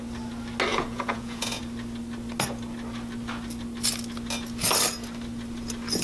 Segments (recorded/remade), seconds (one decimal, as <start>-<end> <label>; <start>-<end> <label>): 0.0-0.7 recorded; 0.7-1.6 remade; 1.6-6.0 recorded